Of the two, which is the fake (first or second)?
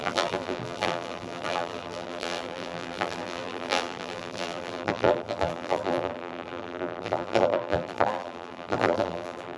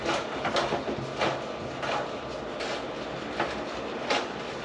first